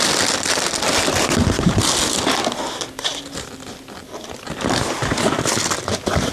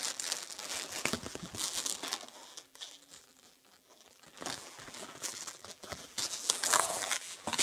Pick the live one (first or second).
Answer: first